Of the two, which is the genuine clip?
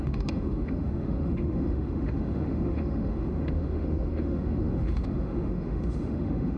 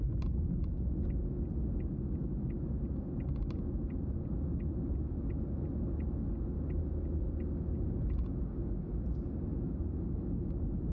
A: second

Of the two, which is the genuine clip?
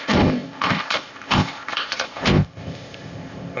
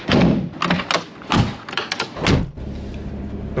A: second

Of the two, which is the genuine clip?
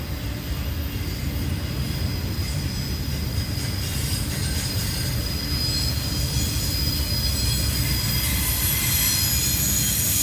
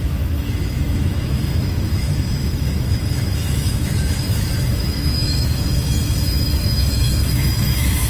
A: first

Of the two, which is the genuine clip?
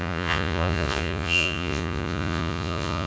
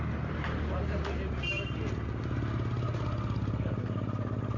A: second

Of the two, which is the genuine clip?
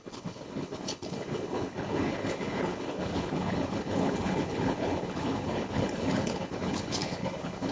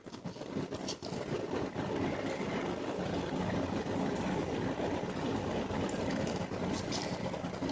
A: second